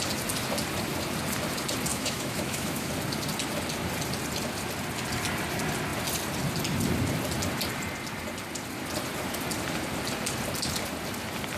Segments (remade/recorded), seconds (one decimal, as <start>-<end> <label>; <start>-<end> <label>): 0.0-1.9 recorded; 1.9-2.9 remade; 2.9-11.6 recorded